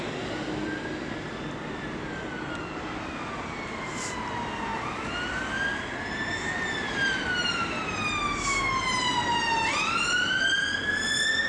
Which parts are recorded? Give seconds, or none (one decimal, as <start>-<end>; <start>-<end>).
0.0-11.5